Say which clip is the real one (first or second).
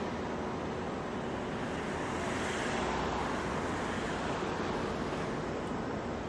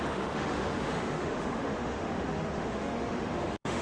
first